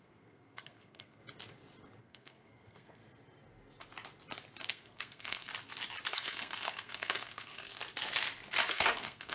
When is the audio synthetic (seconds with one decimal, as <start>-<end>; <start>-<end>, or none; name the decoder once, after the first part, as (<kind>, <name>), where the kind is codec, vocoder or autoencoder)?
0.0-1.2 (codec, SNAC); 2.0-3.0; 4.7-5.5; 6.1-7.8; 8.7-9.3